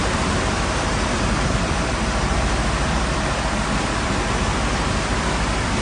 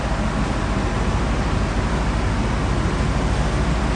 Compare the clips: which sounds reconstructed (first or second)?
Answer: first